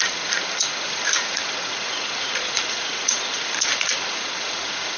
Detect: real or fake fake